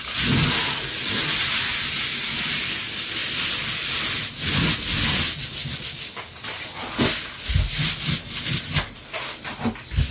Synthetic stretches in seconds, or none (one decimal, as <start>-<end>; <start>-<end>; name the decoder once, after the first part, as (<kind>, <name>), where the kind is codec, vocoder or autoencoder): 5.6-6.3 (codec, DAC)